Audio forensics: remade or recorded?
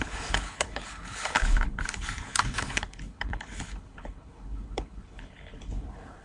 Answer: remade